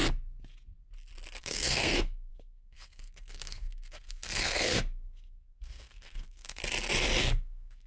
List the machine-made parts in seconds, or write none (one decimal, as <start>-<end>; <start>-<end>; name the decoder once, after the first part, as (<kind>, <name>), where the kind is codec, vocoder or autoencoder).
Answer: 1.4-6.6 (codec, SNAC); 7.2-7.9

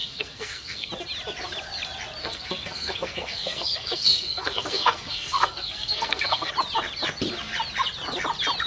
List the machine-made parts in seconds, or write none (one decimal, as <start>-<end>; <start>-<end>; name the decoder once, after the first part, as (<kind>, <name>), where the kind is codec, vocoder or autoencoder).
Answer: 0.0-0.9 (codec, SNAC); 2.2-6.5

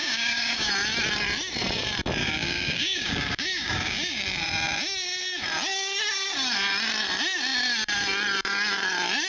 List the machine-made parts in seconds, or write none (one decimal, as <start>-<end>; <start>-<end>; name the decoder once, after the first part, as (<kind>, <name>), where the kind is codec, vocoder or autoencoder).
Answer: 0.0-0.7 (codec, DAC); 2.2-4.2

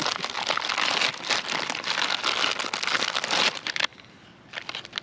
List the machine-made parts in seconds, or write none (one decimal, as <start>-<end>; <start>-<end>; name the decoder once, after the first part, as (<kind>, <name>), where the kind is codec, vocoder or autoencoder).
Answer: none

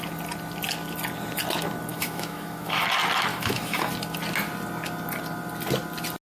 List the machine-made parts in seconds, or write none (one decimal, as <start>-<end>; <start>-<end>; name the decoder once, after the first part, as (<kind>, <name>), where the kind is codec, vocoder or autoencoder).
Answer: 1.9-2.8 (autoencoder, DAC-VAE); 3.3-3.9

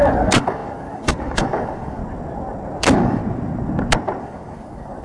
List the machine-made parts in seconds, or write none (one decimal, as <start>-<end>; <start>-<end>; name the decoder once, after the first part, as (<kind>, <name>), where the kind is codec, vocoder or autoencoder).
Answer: 0.0-2.0 (codec, DAC); 2.8-3.2; 4.2-5.0

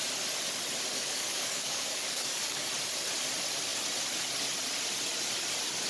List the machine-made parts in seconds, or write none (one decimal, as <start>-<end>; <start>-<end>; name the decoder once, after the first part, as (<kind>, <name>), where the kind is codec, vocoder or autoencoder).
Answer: 0.9-2.7 (codec, DAC)

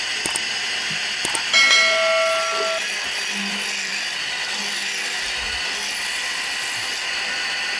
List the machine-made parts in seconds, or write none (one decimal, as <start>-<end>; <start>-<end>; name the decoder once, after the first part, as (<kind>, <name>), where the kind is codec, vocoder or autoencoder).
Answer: 3.9-5.4 (vocoder, BigVGAN v2)